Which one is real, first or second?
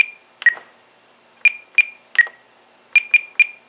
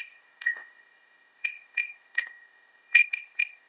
first